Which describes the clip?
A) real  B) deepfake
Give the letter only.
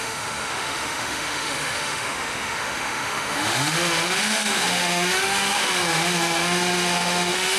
B